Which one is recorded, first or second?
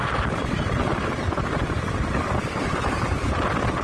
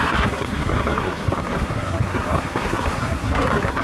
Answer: first